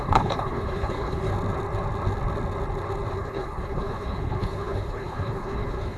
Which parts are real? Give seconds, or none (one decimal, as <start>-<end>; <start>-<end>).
1.3-3.1